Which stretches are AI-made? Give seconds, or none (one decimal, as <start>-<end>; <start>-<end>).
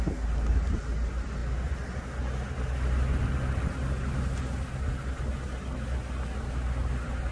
none